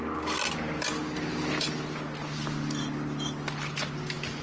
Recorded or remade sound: recorded